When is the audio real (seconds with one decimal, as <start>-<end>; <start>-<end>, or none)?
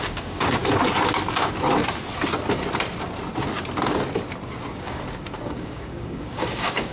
0.6-4.7